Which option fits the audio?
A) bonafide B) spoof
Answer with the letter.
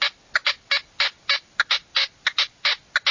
A